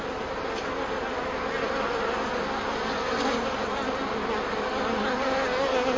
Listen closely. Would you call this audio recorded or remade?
recorded